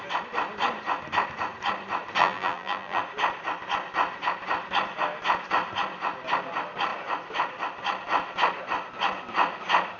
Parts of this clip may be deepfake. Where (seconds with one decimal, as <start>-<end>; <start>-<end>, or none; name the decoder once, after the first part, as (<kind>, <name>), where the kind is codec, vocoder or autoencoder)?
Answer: 2.2-3.0 (vocoder, BigVGAN v2)